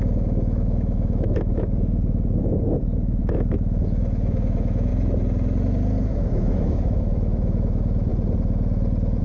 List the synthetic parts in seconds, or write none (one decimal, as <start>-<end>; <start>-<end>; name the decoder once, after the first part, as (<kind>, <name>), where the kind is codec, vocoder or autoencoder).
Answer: 0.0-4.9 (autoencoder, DAC-VAE); 6.0-8.1